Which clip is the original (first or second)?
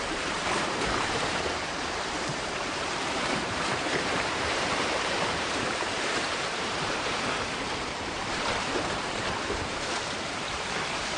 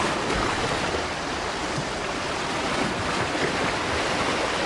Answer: second